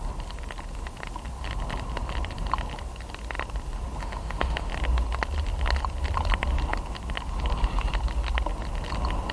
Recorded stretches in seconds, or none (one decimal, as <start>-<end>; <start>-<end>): 0.0-4.0; 4.7-9.3